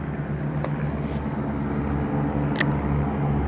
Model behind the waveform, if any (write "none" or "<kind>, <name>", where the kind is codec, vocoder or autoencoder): none